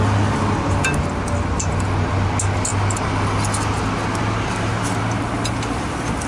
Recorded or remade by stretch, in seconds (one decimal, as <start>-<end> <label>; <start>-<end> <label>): 0.0-6.3 recorded